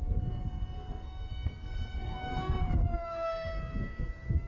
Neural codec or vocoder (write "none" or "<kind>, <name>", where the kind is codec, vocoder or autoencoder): codec, SNAC